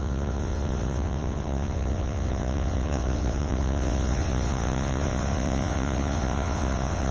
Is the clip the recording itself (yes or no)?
no